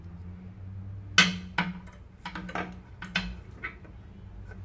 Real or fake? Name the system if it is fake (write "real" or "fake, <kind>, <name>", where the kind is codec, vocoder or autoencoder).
real